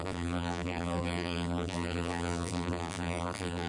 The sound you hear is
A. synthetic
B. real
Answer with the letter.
A